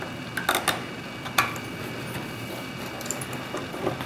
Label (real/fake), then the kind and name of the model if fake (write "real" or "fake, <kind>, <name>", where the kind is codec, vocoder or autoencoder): real